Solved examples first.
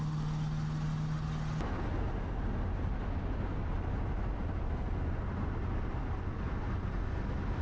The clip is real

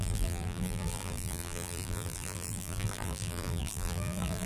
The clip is fake